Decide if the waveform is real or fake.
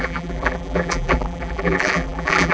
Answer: fake